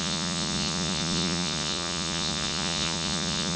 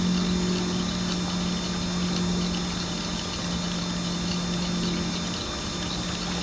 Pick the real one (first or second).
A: second